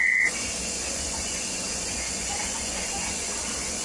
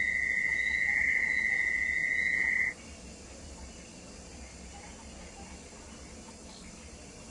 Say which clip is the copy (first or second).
first